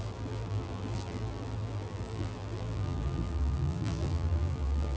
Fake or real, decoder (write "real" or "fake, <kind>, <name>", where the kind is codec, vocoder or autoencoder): fake, vocoder, BigVGAN v2